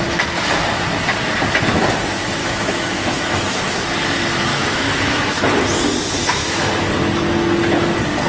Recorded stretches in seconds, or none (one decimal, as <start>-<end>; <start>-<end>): 0.0-2.4; 3.6-4.5; 5.4-8.3